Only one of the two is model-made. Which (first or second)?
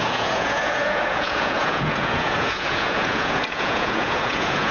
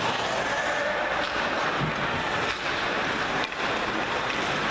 first